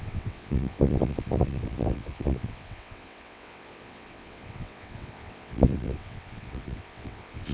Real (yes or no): no